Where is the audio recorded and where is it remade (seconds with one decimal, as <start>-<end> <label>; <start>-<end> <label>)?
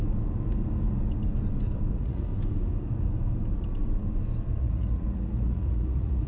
0.0-1.9 recorded; 1.9-2.3 remade; 2.3-4.6 recorded; 4.6-6.3 remade